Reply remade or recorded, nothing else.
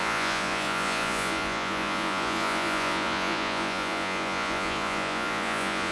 remade